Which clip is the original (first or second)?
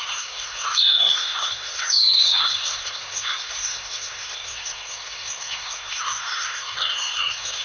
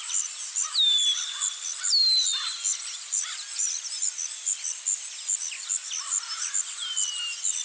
second